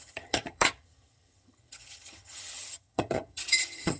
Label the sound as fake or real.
fake